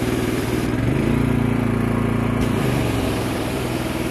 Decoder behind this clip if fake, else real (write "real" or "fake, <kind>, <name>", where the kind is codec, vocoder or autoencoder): fake, vocoder, BigVGAN v2